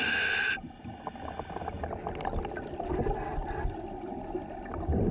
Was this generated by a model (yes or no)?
no